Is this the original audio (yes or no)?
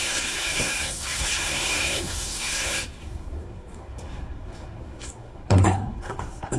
no